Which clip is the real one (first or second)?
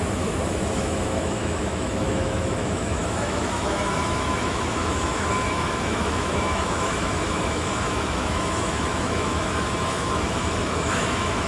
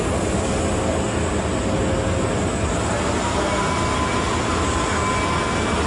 second